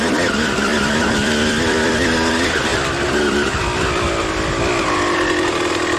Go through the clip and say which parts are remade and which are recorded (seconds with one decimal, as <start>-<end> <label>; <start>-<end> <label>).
0.0-0.7 recorded; 0.7-1.9 remade; 1.9-6.0 recorded